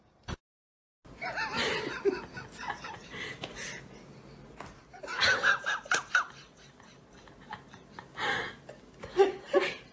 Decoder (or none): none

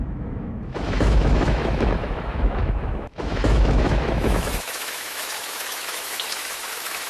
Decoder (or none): autoencoder, DAC-VAE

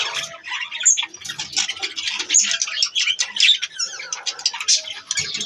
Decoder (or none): none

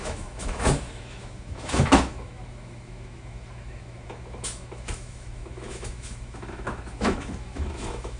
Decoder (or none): autoencoder, DAC-VAE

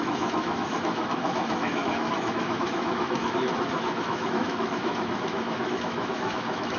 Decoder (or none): autoencoder, DAC-VAE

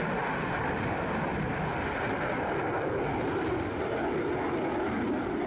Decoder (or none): none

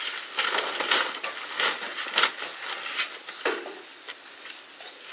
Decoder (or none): none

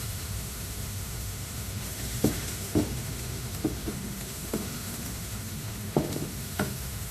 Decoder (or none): autoencoder, DAC-VAE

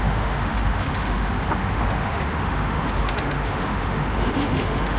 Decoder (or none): autoencoder, DAC-VAE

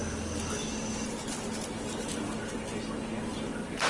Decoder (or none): none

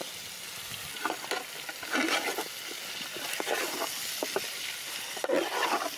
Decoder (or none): none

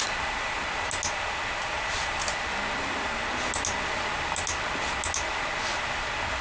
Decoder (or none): none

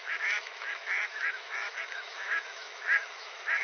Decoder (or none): autoencoder, DAC-VAE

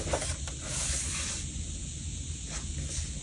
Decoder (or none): none